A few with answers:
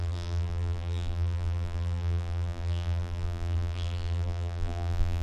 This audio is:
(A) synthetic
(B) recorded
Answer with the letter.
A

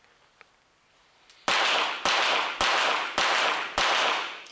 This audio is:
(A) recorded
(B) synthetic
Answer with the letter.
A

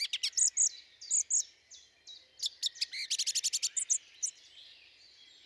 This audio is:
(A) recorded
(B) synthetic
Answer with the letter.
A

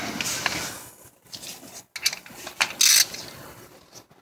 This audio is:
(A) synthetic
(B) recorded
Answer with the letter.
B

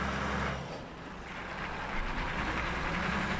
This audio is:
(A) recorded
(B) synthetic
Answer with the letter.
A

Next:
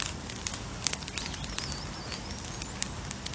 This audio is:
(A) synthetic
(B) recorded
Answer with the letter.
B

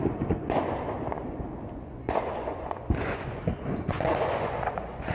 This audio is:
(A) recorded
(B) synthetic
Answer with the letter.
B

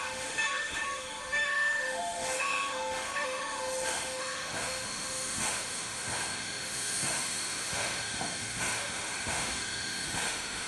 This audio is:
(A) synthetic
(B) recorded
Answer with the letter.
A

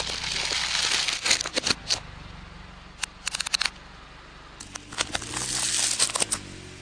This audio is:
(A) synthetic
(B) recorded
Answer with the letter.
B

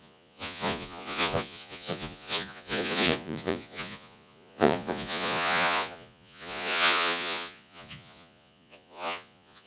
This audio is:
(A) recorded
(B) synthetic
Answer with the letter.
B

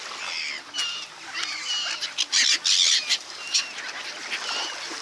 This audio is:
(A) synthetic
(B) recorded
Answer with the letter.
B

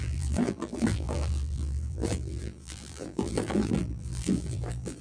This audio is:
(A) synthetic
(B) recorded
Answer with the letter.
A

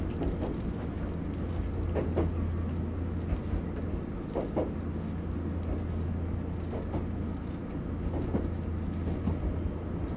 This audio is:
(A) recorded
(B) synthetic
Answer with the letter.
A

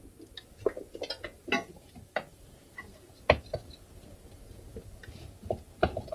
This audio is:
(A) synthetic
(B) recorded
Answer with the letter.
B